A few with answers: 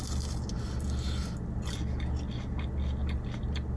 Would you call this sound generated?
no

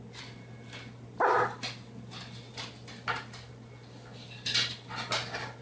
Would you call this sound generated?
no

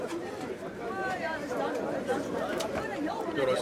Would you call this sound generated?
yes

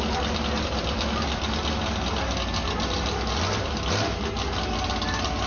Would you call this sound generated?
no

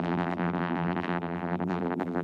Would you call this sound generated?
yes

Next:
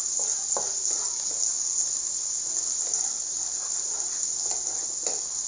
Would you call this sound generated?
no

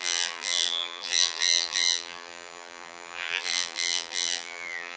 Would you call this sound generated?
yes